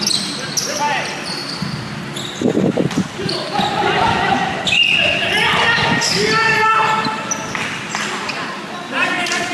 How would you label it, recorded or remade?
recorded